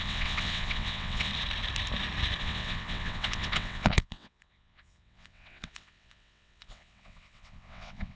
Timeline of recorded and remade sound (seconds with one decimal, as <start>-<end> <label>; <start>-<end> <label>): 0.0-1.3 remade; 1.3-2.4 recorded; 2.4-8.2 remade